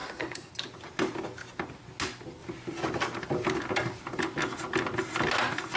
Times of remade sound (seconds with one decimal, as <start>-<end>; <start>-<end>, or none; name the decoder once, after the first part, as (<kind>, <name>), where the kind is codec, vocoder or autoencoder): 0.0-0.5 (codec, SNAC)